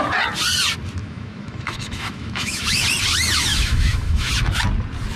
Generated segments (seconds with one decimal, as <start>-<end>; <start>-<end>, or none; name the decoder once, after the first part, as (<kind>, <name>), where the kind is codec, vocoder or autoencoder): 1.0-2.8 (autoencoder, DAC-VAE); 3.5-4.3

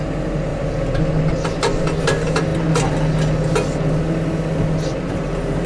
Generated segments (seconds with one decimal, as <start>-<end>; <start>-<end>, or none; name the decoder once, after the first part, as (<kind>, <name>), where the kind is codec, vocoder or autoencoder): 0.5-2.0 (vocoder, BigVGAN v2)

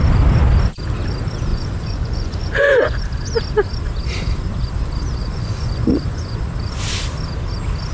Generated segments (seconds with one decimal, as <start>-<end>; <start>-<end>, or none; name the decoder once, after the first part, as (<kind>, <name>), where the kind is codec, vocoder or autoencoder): 1.5-3.0 (vocoder, Vocos); 5.2-6.4

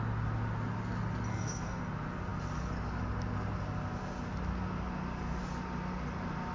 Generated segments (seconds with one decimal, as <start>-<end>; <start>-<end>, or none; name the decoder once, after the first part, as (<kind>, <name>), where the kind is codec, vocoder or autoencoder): 1.3-1.8 (codec, SNAC)

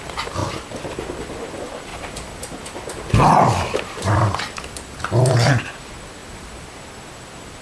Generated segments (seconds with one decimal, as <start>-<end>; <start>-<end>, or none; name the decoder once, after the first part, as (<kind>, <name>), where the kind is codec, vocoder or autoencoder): 1.9-5.5 (vocoder, BigVGAN v2); 6.2-6.8